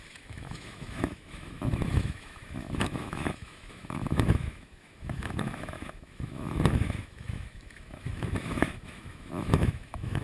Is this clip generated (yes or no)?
yes